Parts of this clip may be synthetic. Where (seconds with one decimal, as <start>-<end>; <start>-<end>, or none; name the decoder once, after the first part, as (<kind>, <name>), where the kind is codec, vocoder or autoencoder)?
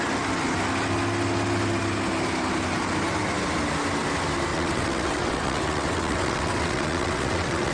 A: 4.5-7.7 (vocoder, WaveNeXt)